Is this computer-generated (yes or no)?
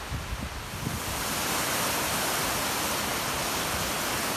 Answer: no